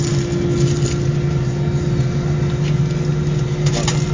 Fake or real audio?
real